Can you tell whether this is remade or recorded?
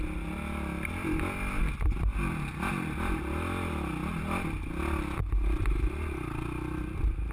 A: recorded